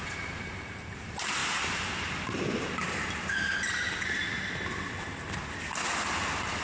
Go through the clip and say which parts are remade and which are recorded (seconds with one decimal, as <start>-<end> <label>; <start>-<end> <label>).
0.0-6.6 recorded